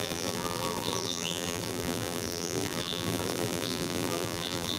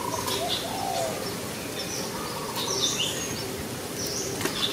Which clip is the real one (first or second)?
second